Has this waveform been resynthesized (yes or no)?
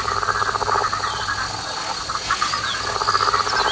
no